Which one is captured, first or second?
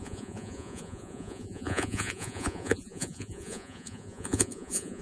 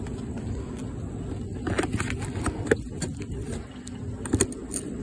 second